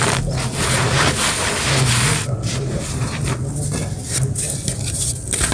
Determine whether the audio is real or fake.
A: real